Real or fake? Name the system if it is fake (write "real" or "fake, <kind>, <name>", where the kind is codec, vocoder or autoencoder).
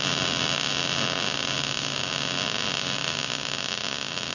real